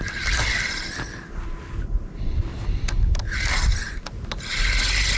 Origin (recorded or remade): recorded